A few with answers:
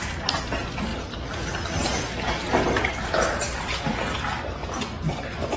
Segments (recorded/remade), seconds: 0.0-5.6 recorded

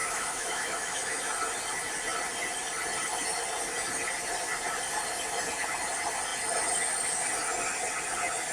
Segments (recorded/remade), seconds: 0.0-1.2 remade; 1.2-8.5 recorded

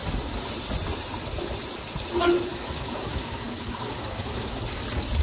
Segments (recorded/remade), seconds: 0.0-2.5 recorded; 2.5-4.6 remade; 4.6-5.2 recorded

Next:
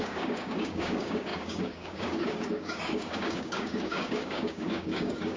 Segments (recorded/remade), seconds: 0.0-5.4 remade

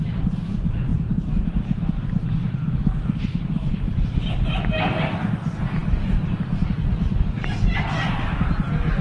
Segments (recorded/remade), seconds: 0.0-9.0 recorded